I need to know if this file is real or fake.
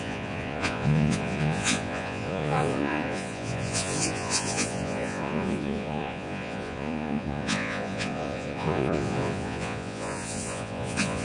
fake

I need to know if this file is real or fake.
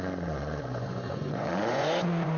fake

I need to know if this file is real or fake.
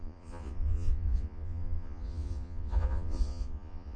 fake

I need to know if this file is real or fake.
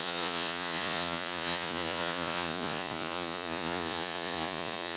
fake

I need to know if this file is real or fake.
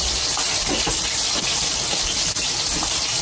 real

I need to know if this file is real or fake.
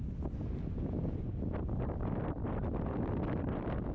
real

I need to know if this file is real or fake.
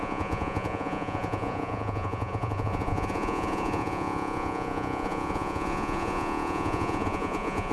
fake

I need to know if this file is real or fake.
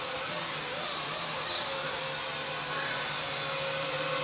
real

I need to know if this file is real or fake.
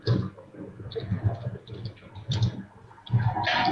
real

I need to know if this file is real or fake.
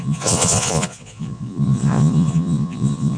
fake